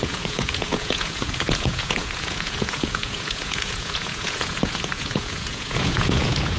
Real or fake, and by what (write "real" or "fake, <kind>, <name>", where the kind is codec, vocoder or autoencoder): fake, vocoder, Vocos